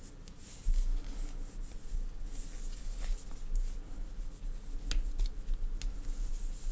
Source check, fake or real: real